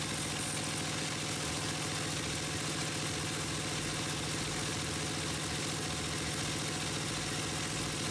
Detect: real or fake real